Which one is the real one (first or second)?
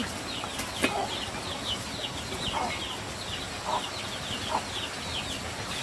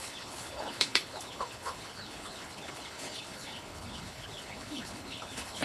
first